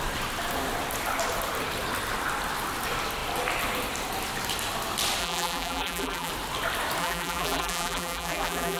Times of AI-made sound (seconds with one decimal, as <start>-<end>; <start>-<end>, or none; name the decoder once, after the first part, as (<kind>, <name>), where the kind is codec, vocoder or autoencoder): 5.2-6.3 (vocoder, BigVGAN v2); 7.0-8.8